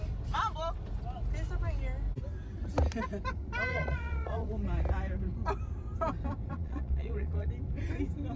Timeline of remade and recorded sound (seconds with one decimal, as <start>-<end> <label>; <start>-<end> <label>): 0.0-3.7 recorded; 3.7-4.5 remade; 4.5-6.5 recorded; 6.5-7.5 remade; 7.5-8.4 recorded